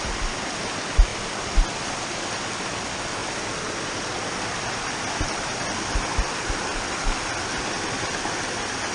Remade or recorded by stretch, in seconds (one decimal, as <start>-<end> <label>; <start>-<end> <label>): 0.0-8.9 recorded